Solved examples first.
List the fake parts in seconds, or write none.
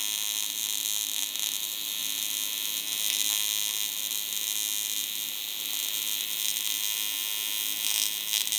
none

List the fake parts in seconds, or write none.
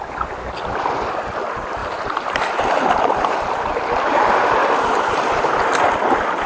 1.8-3.0 (vocoder, BigVGAN v2); 4.6-5.3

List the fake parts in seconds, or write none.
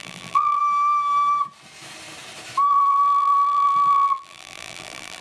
0.0-0.6 (vocoder, BigVGAN v2); 2.7-5.2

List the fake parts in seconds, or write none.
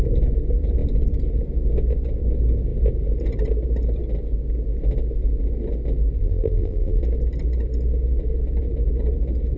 6.2-7.0 (vocoder, BigVGAN v2)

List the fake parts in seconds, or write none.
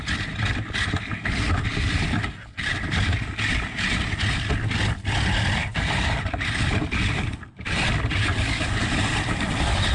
5.7-9.4 (vocoder, BigVGAN v2)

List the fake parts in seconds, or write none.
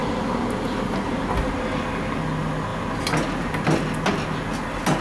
none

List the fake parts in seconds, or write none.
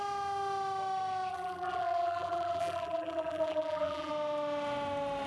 1.3-4.1 (vocoder, BigVGAN v2)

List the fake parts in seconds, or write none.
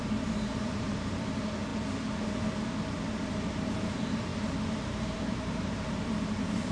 0.0-1.7 (vocoder, BigVGAN v2); 3.5-4.3; 4.8-6.7